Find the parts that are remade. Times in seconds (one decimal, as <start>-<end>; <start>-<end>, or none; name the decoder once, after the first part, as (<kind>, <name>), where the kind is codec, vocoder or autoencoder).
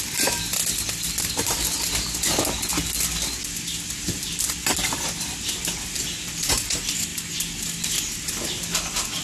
none